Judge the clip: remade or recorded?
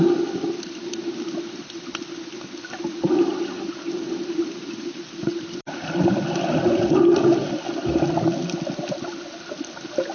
recorded